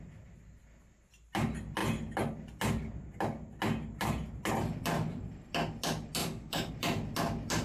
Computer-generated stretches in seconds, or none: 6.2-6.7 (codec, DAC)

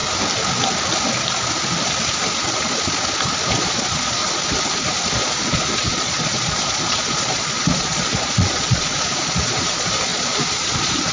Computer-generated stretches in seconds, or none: 3.5-4.2 (vocoder, Vocos); 5.1-11.1

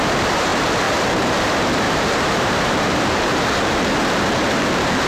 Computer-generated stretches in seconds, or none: 0.0-5.1 (vocoder, BigVGAN v2)

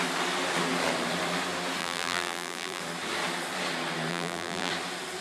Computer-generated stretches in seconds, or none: 1.8-2.8 (vocoder, BigVGAN v2); 4.1-4.7

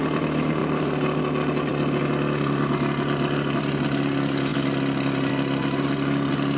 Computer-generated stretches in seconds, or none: 0.6-1.2 (vocoder, BigVGAN v2)

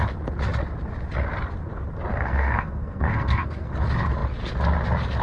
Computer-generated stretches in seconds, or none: 2.1-3.7 (codec, SNAC)